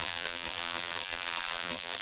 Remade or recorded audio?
remade